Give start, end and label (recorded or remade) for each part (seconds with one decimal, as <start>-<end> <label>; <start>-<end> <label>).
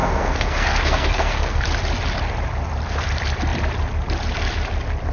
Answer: 0.0-1.6 remade; 1.6-5.1 recorded